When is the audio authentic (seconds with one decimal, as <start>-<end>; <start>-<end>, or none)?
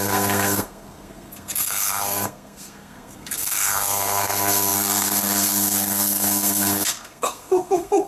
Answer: none